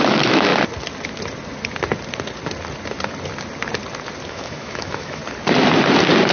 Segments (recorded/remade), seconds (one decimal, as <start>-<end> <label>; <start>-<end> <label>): 0.0-0.5 remade; 0.5-4.3 recorded; 4.3-5.2 remade; 5.2-6.3 recorded